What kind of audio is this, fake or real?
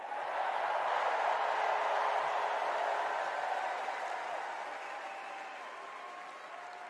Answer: real